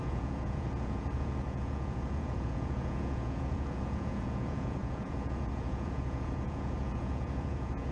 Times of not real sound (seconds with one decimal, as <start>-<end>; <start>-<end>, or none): 0.0-7.9